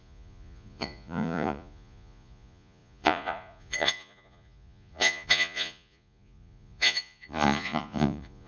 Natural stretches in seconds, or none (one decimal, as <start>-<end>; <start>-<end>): none